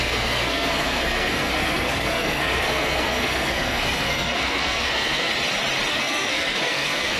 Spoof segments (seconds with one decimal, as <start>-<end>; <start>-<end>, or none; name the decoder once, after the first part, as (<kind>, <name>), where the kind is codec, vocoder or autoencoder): 0.0-5.3 (codec, SNAC); 5.9-7.2